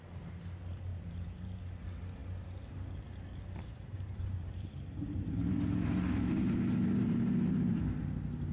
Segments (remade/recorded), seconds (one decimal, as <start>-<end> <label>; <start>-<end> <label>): 0.0-0.9 recorded; 0.9-1.6 remade; 1.6-3.7 recorded; 3.7-7.8 remade; 7.8-8.5 recorded